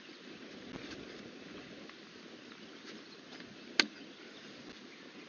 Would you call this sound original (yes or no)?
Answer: yes